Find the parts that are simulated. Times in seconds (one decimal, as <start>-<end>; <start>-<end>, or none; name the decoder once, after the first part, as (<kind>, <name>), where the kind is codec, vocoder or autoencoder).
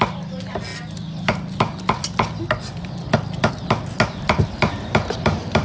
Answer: none